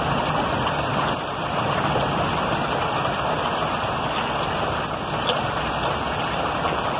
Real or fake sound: real